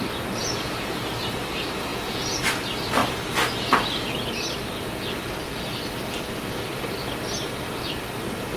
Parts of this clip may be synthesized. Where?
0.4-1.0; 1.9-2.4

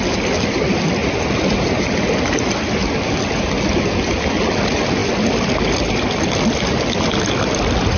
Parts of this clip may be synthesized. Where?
none